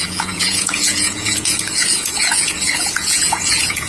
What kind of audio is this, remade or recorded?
remade